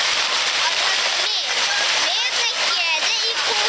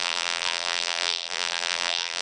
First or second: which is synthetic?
second